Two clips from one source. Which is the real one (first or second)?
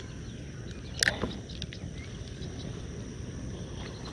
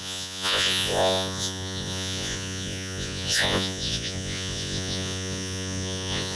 first